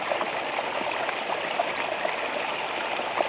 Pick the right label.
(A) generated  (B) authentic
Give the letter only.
B